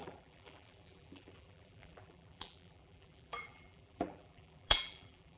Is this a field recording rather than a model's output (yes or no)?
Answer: no